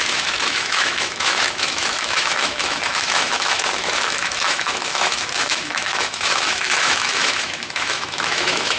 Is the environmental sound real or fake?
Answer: fake